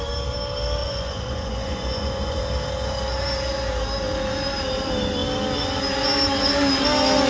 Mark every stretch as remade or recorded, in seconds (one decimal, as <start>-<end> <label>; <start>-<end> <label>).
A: 0.0-0.8 recorded; 0.8-2.4 remade; 2.4-7.3 recorded